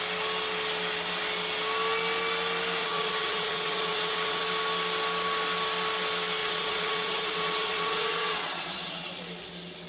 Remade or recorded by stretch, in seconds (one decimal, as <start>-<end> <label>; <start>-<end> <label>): 0.0-2.8 recorded; 2.8-4.4 remade; 4.4-6.4 recorded; 6.4-9.1 remade; 9.1-9.9 recorded